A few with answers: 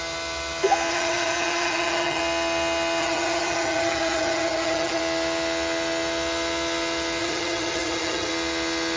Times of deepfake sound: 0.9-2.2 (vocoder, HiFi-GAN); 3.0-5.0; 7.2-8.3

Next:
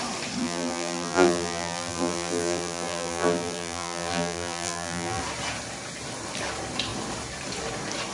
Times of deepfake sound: 0.4-5.2 (vocoder, BigVGAN v2)